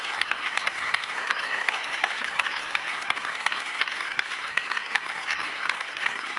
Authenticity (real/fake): fake